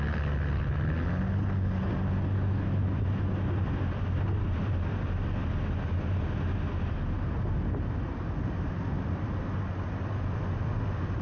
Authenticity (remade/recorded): recorded